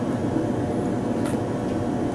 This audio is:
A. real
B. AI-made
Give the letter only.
A